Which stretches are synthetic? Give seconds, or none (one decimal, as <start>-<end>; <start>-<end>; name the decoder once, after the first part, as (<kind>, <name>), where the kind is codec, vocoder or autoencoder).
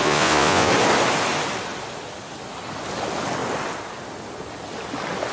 0.0-0.7 (vocoder, Vocos)